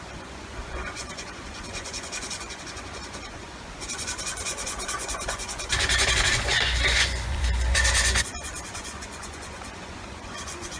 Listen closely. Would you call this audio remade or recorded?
remade